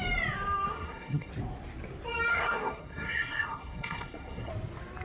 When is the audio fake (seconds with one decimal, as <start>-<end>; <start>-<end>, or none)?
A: 0.7-1.3; 2.3-4.5